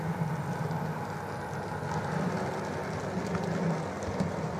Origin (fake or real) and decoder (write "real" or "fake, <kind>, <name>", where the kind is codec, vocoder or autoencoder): real